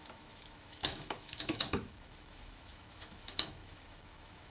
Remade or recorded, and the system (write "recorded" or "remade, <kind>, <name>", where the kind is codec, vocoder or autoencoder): remade, autoencoder, DAC-VAE